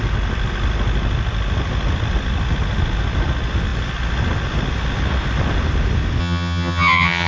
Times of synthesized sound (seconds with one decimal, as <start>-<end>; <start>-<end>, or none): 6.2-7.3